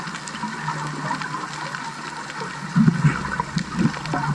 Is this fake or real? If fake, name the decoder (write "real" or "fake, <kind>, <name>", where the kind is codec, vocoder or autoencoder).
real